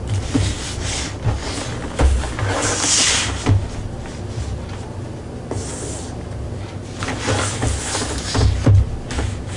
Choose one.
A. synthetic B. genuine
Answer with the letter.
B